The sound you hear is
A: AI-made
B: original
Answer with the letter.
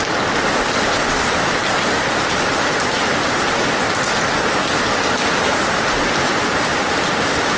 B